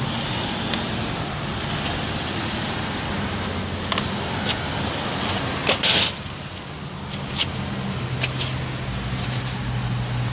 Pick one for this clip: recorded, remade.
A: recorded